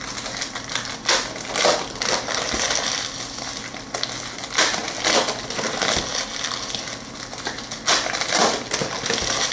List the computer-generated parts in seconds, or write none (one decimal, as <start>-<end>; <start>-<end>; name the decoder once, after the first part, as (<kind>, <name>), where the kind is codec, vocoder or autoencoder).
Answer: none